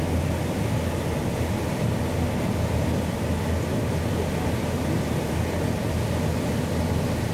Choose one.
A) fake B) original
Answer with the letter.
B